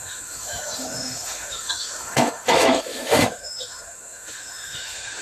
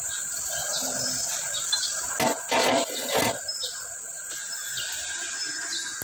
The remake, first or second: first